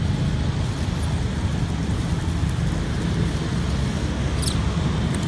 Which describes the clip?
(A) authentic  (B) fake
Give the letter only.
A